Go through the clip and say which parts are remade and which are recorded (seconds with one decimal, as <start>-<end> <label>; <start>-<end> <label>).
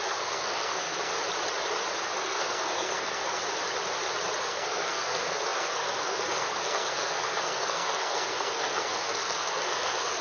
0.0-1.1 remade; 1.1-2.2 recorded; 2.2-3.4 remade; 3.4-4.4 recorded; 4.4-10.2 remade